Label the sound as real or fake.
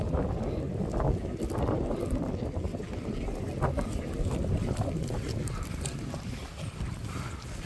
real